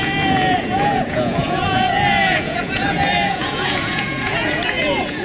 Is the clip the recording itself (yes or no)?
no